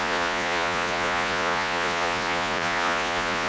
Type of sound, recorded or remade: remade